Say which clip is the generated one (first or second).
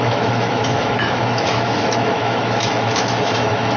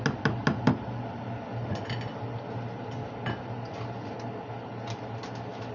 first